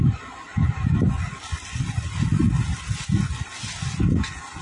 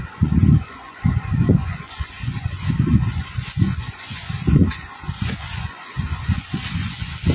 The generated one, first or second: second